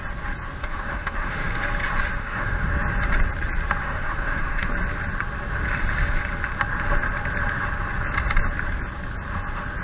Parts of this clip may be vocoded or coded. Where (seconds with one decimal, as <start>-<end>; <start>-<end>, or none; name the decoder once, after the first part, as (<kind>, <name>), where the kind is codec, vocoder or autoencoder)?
0.6-1.5 (autoencoder, DAC-VAE); 2.2-2.7; 3.8-4.7